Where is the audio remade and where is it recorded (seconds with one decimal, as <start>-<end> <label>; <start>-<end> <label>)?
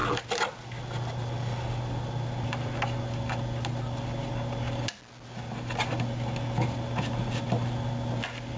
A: 0.0-8.6 recorded